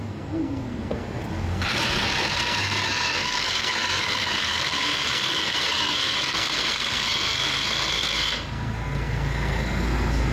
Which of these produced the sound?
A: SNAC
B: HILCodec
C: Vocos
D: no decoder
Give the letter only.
A